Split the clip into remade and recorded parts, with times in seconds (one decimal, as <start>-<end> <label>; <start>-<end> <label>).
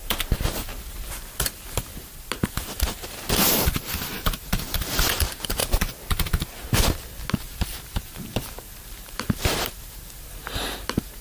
0.0-0.7 remade; 0.7-3.3 recorded; 3.3-5.6 remade; 5.6-7.3 recorded; 7.3-10.4 remade; 10.4-11.2 recorded